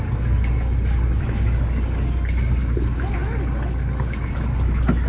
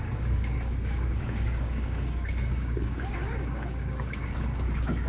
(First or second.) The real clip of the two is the first